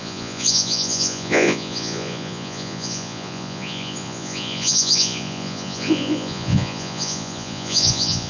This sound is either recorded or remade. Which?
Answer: remade